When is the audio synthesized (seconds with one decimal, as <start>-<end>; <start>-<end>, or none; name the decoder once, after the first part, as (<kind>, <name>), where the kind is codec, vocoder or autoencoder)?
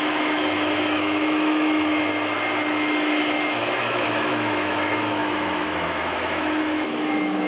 0.0-2.1 (autoencoder, DAC-VAE); 2.7-7.5